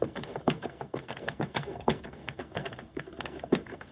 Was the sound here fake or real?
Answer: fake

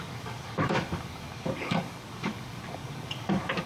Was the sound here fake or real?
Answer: fake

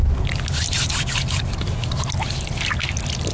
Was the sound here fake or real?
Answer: real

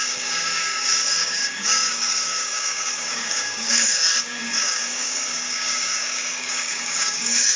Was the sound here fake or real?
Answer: fake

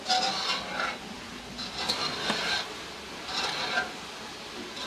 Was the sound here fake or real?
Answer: real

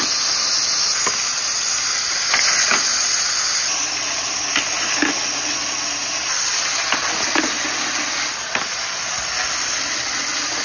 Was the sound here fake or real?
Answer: real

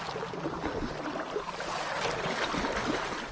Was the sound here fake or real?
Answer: real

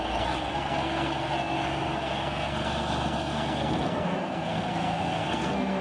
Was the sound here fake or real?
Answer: fake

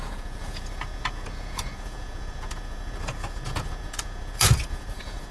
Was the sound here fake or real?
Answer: fake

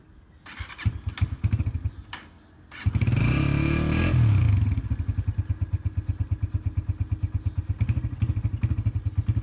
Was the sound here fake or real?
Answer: real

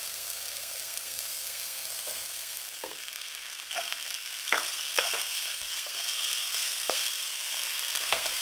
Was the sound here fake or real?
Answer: fake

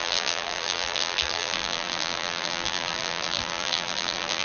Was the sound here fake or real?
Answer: fake